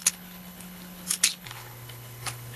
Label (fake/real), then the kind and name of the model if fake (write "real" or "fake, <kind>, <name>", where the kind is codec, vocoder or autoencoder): fake, codec, HILCodec